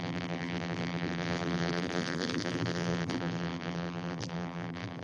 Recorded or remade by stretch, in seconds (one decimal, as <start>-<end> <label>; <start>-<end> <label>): 0.0-5.0 remade